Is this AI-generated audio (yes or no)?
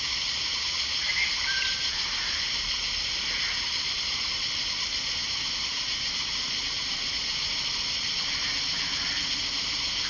no